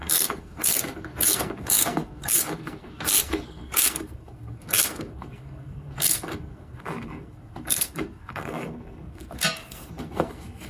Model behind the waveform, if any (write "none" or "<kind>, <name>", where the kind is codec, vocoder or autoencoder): codec, SNAC